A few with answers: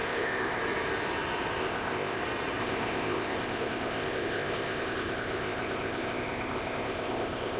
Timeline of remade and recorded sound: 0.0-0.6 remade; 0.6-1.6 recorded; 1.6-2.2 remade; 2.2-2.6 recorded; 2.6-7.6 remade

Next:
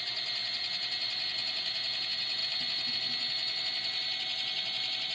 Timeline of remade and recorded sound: 0.0-5.1 recorded

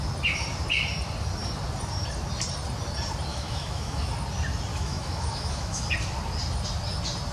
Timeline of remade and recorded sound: 0.0-3.3 recorded; 3.3-4.1 remade; 4.1-4.7 recorded; 4.7-5.8 remade; 5.8-7.3 recorded

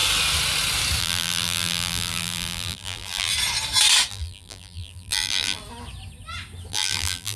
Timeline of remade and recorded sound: 0.0-1.0 recorded; 1.0-3.3 remade; 3.3-4.1 recorded; 4.1-5.6 remade; 5.6-6.7 recorded; 6.7-7.4 remade